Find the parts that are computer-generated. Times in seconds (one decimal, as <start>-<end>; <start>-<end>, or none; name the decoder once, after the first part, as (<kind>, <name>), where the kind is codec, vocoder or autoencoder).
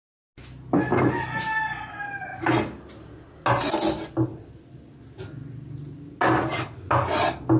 none